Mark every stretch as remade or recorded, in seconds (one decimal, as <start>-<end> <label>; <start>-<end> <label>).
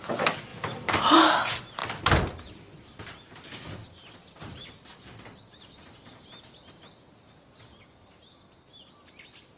0.0-0.5 recorded; 0.5-1.2 remade; 1.2-1.8 recorded; 1.8-6.7 remade; 6.7-9.6 recorded